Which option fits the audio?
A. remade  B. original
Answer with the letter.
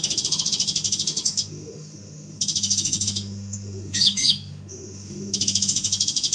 A